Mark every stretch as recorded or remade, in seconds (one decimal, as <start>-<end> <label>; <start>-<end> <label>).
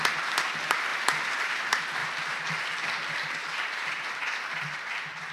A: 0.0-2.0 recorded; 2.0-5.3 remade